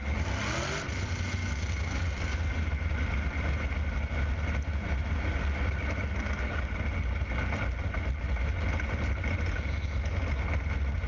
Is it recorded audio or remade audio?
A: recorded